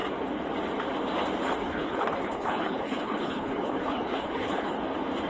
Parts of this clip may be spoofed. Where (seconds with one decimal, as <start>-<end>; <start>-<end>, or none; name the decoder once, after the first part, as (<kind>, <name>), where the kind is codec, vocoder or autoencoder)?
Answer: 1.6-4.8 (codec, HILCodec)